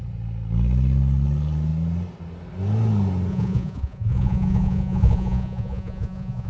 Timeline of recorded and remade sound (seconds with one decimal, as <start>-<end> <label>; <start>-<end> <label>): 0.0-3.3 recorded; 3.3-6.5 remade